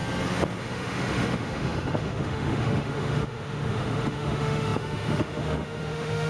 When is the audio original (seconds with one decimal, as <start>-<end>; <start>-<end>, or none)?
0.0-0.6